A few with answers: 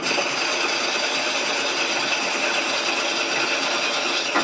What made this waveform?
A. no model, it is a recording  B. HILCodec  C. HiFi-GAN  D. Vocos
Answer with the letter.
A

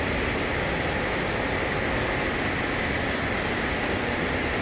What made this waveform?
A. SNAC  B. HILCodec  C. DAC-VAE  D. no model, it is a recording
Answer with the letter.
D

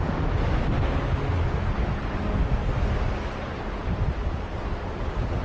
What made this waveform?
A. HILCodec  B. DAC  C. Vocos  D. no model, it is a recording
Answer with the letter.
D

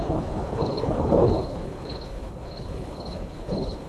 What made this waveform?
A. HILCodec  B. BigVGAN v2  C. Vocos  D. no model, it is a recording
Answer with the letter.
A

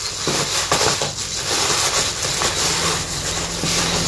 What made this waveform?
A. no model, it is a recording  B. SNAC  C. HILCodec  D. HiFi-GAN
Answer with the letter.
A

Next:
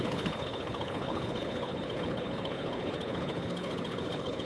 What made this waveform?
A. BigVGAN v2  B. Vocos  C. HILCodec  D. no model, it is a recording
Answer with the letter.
C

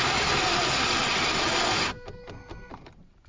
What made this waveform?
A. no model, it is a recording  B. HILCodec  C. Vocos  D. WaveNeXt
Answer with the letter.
A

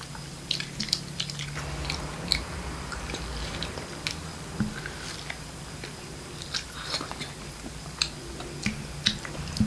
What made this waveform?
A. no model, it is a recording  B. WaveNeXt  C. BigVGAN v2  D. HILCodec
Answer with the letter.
A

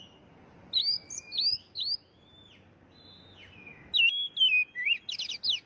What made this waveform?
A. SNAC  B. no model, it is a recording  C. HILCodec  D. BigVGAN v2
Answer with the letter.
B